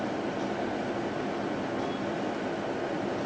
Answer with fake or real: real